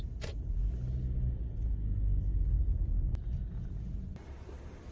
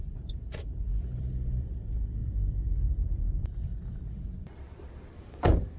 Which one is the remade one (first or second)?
second